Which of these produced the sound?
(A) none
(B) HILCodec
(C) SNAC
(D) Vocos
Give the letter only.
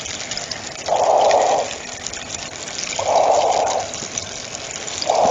A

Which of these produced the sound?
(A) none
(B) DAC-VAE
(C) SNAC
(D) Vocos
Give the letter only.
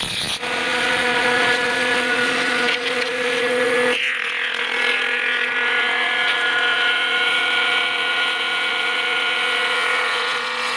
D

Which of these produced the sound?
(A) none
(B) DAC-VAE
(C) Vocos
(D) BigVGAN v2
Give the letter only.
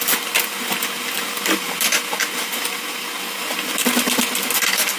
A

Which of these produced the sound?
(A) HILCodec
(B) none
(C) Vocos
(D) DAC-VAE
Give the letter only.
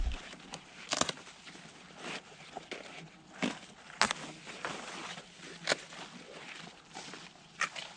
B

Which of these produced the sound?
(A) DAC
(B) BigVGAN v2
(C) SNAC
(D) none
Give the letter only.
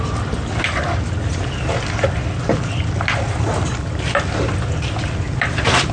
D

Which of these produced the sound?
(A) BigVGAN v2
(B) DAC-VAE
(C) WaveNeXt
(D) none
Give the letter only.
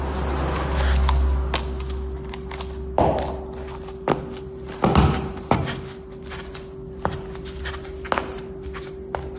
D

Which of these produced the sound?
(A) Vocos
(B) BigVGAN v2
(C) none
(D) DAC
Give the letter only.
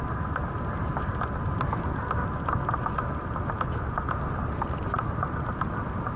C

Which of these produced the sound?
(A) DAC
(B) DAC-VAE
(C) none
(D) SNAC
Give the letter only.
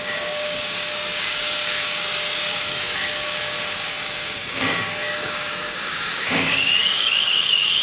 A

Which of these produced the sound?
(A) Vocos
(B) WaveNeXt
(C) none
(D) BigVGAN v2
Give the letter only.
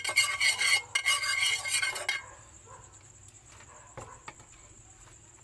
C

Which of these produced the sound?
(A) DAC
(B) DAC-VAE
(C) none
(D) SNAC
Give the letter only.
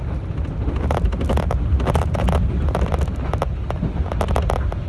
C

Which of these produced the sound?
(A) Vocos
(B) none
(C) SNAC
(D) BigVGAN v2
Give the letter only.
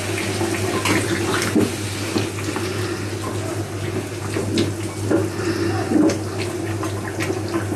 B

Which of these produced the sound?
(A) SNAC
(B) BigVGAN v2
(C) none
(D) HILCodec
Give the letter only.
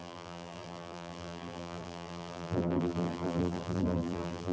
B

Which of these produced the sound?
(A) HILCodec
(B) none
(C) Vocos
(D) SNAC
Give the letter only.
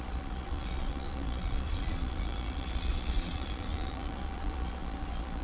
C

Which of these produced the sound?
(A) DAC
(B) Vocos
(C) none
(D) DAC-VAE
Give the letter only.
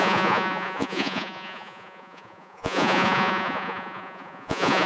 B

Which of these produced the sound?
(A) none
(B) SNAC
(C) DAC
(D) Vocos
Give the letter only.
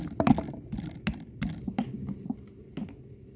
A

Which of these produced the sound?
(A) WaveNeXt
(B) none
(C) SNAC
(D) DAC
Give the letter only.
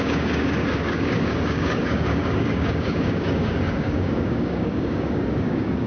D